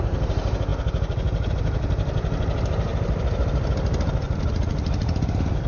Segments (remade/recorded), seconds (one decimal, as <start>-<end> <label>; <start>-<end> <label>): 0.0-5.7 recorded